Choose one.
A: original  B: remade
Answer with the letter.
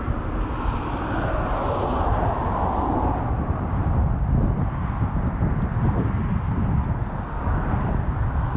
A